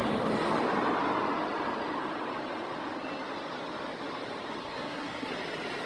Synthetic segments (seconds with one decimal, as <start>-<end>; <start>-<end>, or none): 4.6-5.3